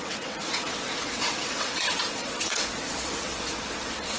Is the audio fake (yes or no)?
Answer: yes